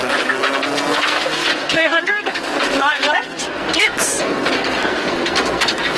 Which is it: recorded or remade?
remade